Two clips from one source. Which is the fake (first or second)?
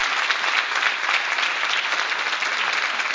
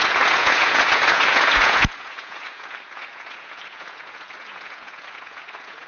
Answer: second